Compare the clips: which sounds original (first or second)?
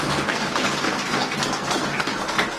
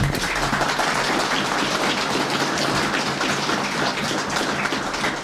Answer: second